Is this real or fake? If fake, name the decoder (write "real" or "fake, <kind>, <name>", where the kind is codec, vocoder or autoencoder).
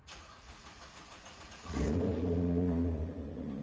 fake, vocoder, Vocos